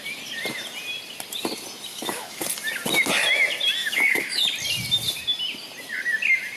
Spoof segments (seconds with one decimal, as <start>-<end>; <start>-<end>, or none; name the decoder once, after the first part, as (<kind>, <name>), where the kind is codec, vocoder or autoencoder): 1.9-2.4 (autoencoder, DAC-VAE); 3.8-4.4